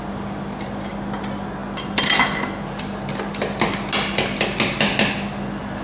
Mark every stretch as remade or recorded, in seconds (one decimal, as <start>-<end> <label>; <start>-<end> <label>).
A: 0.0-5.8 recorded